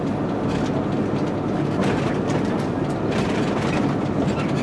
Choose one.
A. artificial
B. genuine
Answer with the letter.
B